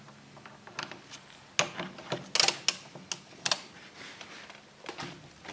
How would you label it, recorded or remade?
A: recorded